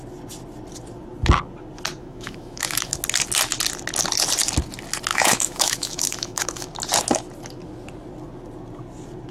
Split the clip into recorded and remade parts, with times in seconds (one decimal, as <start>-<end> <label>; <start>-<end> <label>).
0.0-2.0 recorded; 2.0-3.0 remade; 3.0-5.1 recorded; 5.1-6.7 remade; 6.7-9.3 recorded